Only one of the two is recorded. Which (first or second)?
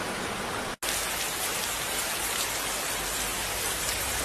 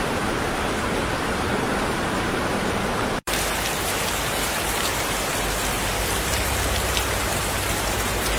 first